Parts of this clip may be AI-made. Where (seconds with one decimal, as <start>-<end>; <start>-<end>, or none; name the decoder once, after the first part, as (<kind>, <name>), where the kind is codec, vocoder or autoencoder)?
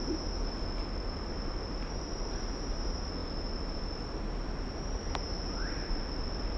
none